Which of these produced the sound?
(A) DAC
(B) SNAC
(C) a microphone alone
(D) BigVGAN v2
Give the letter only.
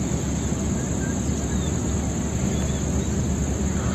C